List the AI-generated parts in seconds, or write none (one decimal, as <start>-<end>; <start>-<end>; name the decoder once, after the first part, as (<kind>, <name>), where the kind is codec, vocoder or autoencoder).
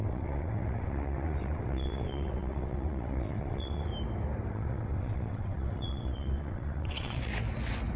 0.0-3.9 (vocoder, WaveNeXt); 4.5-7.3